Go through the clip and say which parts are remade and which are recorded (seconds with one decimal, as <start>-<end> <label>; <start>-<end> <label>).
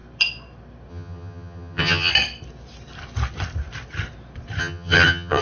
0.0-0.9 recorded; 0.9-2.1 remade; 2.1-4.6 recorded; 4.6-5.4 remade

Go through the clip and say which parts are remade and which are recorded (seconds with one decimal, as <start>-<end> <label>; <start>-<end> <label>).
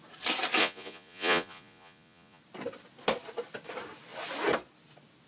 0.0-0.6 recorded; 0.6-2.4 remade; 2.4-5.3 recorded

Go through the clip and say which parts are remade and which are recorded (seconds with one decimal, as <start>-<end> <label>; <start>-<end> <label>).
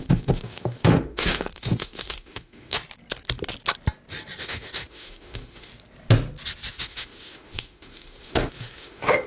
0.0-2.8 remade; 2.8-4.4 recorded; 4.4-5.7 remade; 5.7-6.7 recorded; 6.7-9.3 remade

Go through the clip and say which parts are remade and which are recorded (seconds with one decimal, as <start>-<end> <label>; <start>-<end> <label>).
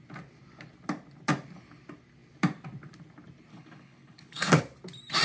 0.0-3.5 recorded; 3.5-4.6 remade; 4.6-5.2 recorded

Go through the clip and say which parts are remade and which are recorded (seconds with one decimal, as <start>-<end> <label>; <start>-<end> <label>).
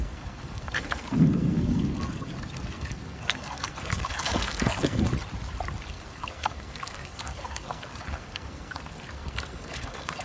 0.0-5.1 remade; 5.1-5.9 recorded; 5.9-10.2 remade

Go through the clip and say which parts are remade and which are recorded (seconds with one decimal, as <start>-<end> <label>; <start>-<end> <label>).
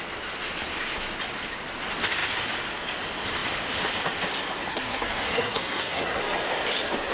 0.0-4.7 recorded; 4.7-6.2 remade; 6.2-7.1 recorded